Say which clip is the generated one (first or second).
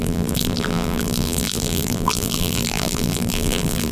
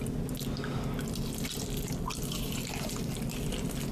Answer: first